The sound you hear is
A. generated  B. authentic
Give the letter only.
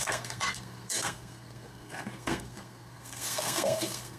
A